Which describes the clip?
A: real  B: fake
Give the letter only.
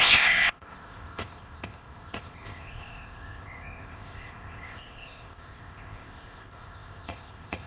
B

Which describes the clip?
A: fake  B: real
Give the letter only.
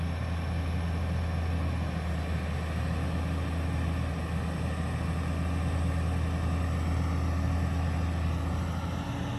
B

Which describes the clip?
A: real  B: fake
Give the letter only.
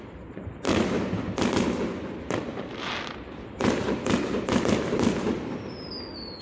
A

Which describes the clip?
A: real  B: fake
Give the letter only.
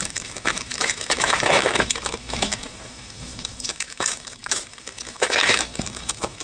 B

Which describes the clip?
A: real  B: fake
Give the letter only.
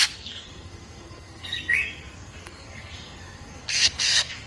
B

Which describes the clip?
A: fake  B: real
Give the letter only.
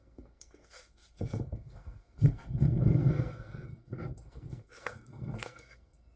A